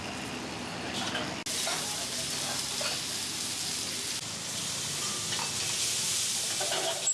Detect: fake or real real